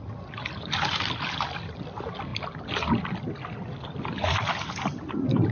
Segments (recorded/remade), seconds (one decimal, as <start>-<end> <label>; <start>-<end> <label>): 0.0-5.5 recorded